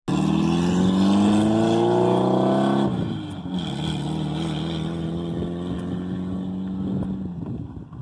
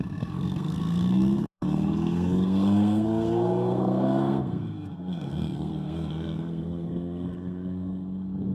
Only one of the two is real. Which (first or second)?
first